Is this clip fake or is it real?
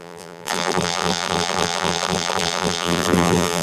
fake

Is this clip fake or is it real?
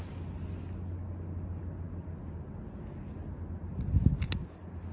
real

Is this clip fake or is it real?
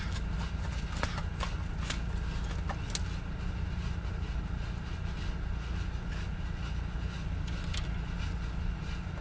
real